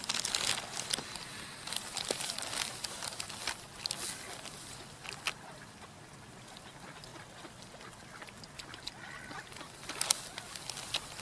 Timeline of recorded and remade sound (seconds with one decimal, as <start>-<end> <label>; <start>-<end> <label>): 0.0-11.2 recorded

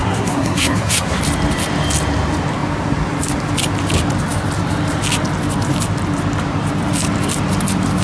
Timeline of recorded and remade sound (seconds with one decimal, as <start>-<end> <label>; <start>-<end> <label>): 0.0-1.2 remade; 1.2-8.0 recorded

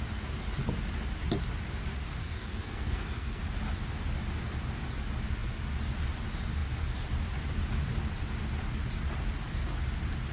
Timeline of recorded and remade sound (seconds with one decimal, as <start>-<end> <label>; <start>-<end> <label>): 0.0-2.2 recorded; 2.2-3.4 remade; 3.4-10.3 recorded

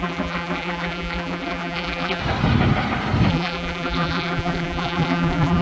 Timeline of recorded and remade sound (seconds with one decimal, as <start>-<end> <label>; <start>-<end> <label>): 0.0-2.2 remade; 2.2-3.3 recorded; 3.3-5.6 remade

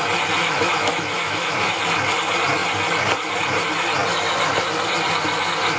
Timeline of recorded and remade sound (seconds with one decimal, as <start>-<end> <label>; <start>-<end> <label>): 0.0-0.4 recorded; 0.4-1.8 remade; 1.8-5.8 recorded

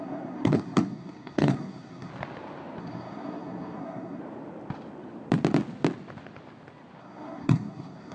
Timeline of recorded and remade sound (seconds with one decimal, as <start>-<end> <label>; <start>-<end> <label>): 0.0-2.1 remade; 2.1-2.8 recorded; 2.8-4.2 remade; 4.2-7.0 recorded; 7.0-8.1 remade